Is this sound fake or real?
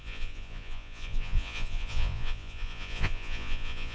fake